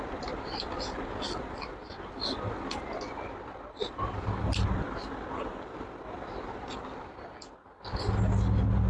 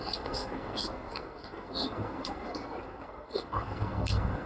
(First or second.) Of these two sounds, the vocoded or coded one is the second